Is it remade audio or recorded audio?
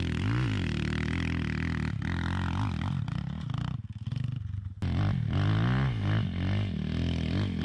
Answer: recorded